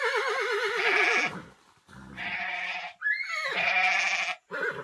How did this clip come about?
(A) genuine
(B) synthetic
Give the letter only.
A